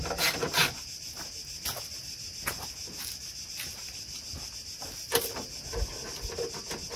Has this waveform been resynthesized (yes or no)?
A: no